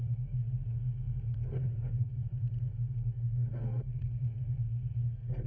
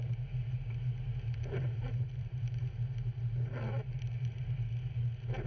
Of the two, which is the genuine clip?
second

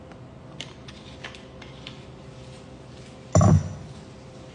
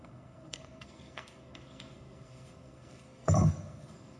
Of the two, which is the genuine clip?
first